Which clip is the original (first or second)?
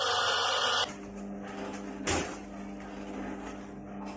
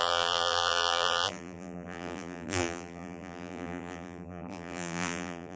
first